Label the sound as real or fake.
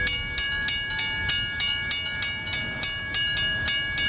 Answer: real